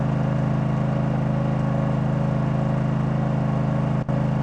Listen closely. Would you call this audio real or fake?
real